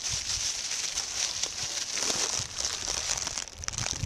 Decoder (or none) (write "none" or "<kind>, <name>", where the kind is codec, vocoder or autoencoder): vocoder, BigVGAN v2